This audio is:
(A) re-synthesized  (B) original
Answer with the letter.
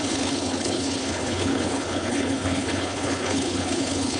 A